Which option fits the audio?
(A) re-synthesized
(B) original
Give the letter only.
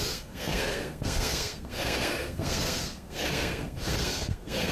A